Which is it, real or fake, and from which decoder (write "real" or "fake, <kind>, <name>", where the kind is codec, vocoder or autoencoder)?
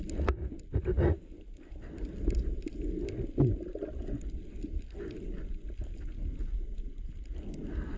real